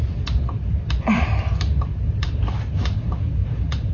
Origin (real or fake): real